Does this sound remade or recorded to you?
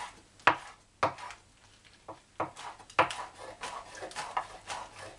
recorded